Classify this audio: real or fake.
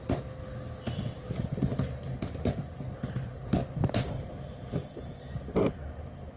real